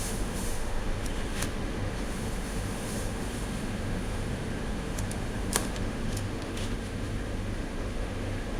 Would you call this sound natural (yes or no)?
no